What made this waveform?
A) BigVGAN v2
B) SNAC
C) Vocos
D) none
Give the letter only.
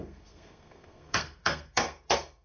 B